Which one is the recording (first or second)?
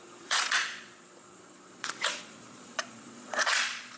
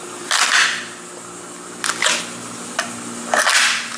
second